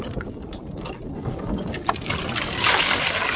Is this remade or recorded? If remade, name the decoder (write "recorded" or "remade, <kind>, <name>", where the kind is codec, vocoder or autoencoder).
recorded